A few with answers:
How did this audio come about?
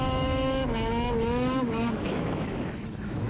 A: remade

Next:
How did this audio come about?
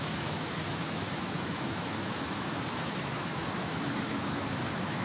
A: remade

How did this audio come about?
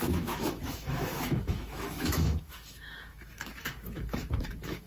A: remade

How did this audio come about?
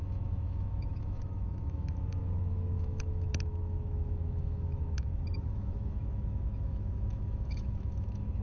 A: remade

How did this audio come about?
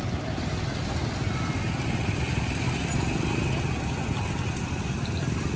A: recorded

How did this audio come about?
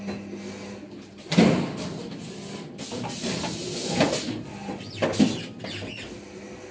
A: recorded